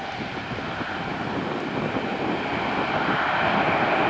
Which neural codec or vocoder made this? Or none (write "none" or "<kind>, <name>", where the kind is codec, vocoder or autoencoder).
none